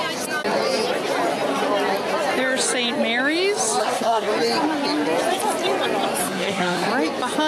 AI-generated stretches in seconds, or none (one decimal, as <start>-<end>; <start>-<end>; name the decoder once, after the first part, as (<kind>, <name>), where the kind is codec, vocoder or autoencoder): 3.8-4.3 (codec, SNAC); 6.2-6.9